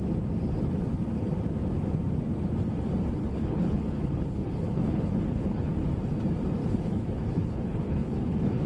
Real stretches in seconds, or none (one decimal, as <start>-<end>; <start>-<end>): 0.0-3.2; 5.7-6.6